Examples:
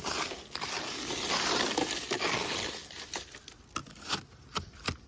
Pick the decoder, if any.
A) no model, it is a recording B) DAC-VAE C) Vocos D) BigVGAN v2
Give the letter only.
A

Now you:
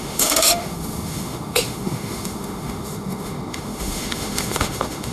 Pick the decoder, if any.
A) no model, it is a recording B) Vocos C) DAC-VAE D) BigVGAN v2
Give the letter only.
C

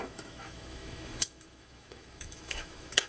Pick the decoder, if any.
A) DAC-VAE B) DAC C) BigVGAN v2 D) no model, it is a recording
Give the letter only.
A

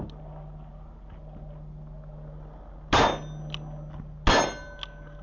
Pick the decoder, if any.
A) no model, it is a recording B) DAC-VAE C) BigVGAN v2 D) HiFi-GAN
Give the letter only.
A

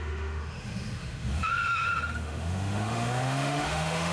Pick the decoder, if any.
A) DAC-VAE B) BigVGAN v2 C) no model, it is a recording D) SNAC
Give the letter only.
A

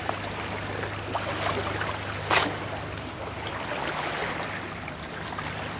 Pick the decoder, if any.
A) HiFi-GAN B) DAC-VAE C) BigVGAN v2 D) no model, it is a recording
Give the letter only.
D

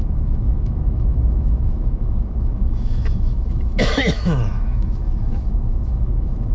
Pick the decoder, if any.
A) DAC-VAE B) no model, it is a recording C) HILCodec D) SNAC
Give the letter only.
A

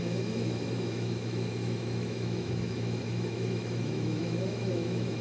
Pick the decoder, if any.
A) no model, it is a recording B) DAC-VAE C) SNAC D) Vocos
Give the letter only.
B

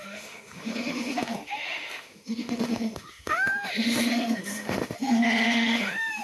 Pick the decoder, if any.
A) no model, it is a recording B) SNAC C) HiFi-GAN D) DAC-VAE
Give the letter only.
D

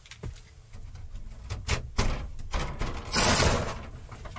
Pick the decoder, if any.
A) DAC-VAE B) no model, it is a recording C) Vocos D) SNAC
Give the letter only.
B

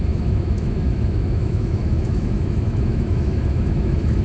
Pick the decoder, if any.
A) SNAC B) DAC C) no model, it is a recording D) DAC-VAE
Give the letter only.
D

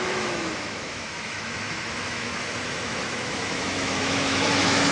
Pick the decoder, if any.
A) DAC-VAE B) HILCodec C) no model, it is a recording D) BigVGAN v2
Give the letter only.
A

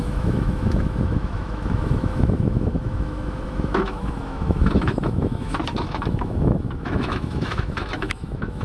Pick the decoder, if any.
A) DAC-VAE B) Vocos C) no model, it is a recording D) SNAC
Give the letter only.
A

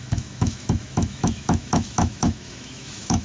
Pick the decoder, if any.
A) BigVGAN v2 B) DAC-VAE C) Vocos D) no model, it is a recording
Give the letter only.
B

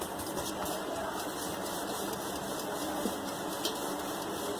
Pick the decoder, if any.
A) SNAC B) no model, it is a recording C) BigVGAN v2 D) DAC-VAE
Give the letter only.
B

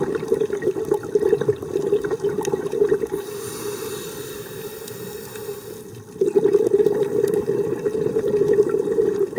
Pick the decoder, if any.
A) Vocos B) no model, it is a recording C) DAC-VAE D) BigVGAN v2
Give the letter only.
B